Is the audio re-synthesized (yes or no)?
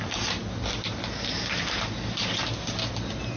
no